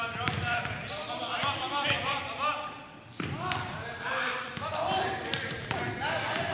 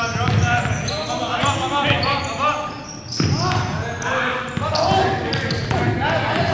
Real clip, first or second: second